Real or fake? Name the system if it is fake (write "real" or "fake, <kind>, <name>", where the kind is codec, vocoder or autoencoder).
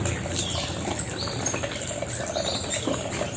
real